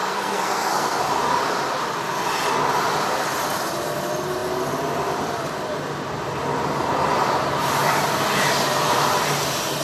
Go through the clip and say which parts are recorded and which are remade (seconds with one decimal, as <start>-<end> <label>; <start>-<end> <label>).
0.0-1.0 remade; 1.0-9.8 recorded